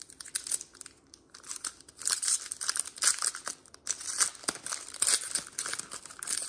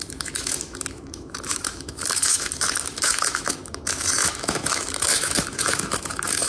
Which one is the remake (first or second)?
second